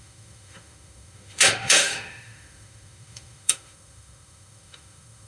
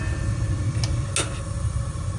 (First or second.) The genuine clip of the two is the second